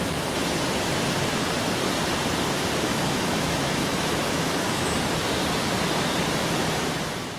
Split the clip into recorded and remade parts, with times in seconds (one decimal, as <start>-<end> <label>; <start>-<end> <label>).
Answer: 0.0-2.9 recorded; 2.9-4.9 remade; 4.9-7.4 recorded